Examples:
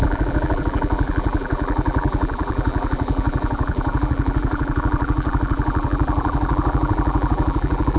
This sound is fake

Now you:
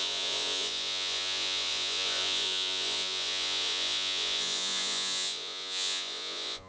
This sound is fake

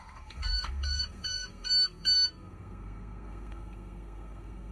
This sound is fake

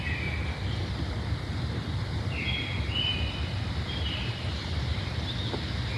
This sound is real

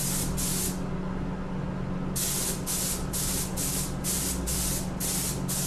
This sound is real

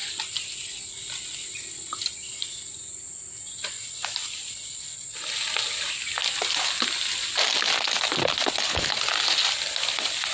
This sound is real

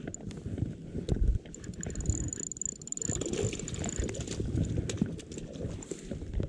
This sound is real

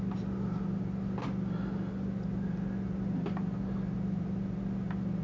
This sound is real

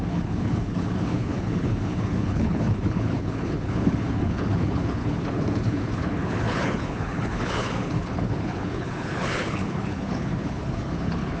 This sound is fake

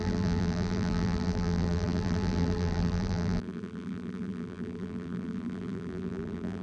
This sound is fake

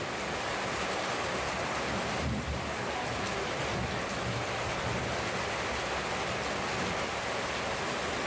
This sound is real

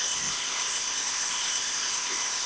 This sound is fake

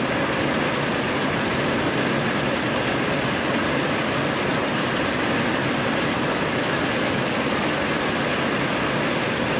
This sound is real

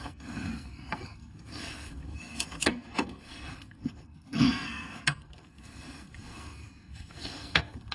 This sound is fake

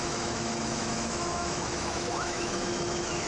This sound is fake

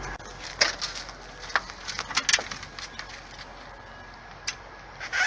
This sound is real